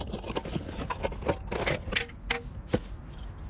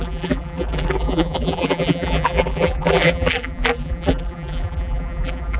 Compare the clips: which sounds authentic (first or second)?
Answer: first